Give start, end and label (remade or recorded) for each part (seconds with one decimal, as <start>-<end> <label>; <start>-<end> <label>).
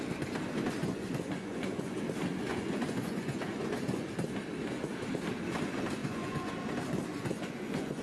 0.0-0.8 recorded; 0.8-2.0 remade; 2.0-2.5 recorded; 2.5-4.1 remade; 4.1-6.0 recorded; 6.0-6.5 remade; 6.5-7.1 recorded; 7.1-8.0 remade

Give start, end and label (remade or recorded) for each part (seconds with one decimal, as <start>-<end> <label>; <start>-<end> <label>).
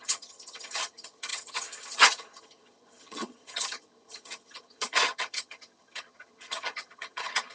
0.0-7.5 remade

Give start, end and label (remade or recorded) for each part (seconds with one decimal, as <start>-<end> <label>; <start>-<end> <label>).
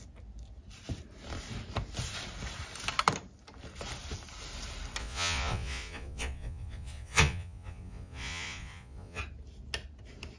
0.0-5.0 recorded; 5.0-9.2 remade; 9.2-10.4 recorded